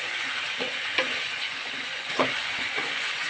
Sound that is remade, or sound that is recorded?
remade